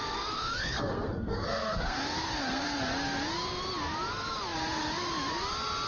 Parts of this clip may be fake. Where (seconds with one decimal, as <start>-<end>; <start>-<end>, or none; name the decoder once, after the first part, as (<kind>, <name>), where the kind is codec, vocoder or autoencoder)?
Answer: 0.0-2.8 (codec, SNAC)